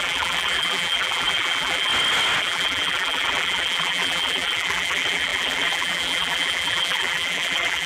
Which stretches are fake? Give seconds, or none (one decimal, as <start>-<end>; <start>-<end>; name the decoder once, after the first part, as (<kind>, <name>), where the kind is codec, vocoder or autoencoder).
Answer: 0.0-1.9 (vocoder, BigVGAN v2); 2.4-7.9